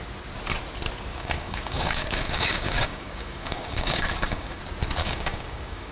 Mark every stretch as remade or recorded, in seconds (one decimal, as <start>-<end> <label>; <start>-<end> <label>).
0.0-1.1 recorded; 1.1-4.6 remade; 4.6-5.0 recorded; 5.0-5.9 remade